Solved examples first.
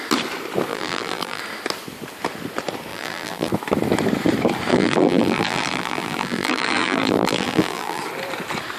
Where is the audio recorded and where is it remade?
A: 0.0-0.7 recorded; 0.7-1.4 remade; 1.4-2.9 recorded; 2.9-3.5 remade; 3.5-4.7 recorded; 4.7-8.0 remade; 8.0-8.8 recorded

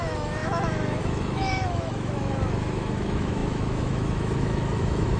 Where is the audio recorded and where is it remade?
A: 0.0-5.2 remade

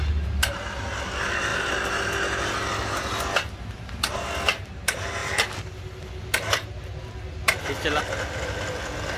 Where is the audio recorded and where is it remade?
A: 0.0-9.2 recorded

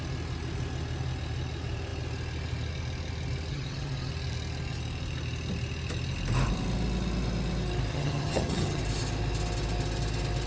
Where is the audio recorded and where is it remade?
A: 0.0-3.5 recorded; 3.5-4.1 remade; 4.1-7.9 recorded; 7.9-8.8 remade; 8.8-10.5 recorded

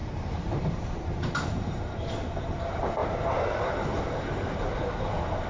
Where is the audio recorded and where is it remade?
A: 0.0-2.1 remade; 2.1-5.5 recorded

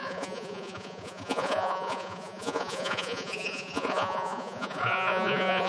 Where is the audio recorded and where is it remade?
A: 0.0-5.7 remade

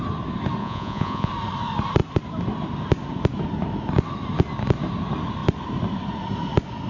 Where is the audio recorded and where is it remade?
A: 0.0-0.6 recorded; 0.6-1.3 remade; 1.3-6.9 recorded

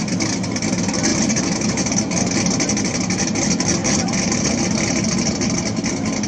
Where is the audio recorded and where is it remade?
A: 0.0-1.1 recorded; 1.1-1.9 remade; 1.9-3.8 recorded; 3.8-4.5 remade; 4.5-6.3 recorded